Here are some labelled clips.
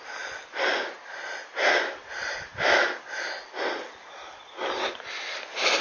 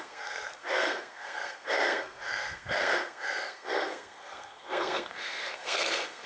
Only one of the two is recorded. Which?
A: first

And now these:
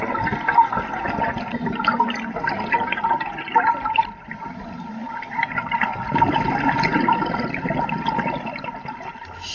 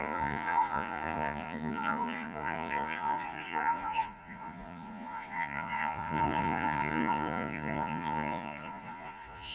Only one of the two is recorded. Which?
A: first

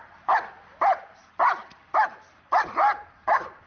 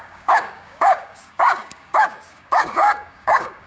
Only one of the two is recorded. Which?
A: first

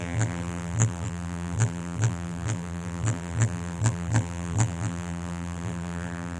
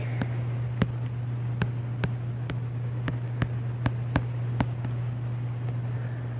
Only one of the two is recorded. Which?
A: second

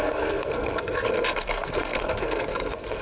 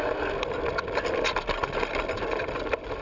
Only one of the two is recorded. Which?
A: second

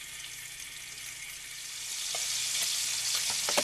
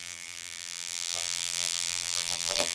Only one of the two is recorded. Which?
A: first